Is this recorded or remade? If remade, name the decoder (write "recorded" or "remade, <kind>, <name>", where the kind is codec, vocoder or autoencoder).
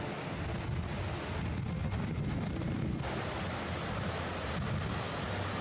recorded